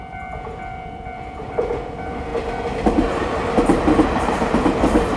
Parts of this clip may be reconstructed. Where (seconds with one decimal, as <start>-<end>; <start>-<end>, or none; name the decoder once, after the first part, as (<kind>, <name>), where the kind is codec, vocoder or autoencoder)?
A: 0.0-2.3 (vocoder, BigVGAN v2); 4.1-5.2